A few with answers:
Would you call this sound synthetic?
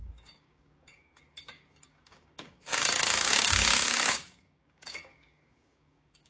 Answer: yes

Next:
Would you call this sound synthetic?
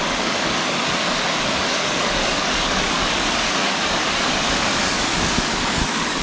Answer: yes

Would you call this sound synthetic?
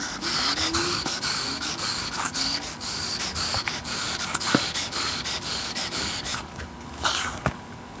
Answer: yes